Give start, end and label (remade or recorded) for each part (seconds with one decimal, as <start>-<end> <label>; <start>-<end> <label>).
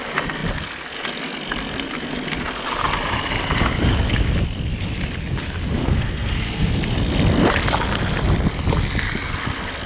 0.0-5.8 recorded; 5.8-6.7 remade; 6.7-9.9 recorded